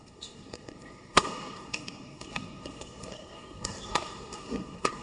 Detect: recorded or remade remade